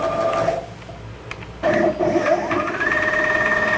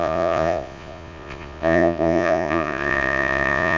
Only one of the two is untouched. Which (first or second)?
first